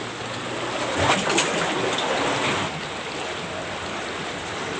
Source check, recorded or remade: recorded